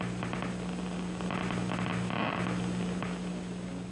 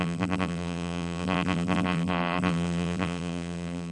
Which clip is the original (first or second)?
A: first